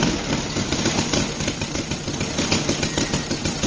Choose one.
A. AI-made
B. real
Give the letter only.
B